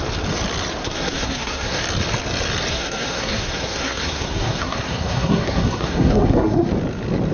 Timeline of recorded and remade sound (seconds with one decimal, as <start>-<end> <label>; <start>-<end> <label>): 0.0-0.8 recorded; 0.8-1.8 remade; 1.8-2.7 recorded; 2.7-6.7 remade; 6.7-7.3 recorded